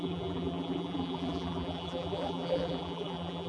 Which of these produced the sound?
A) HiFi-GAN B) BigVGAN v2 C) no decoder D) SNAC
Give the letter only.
B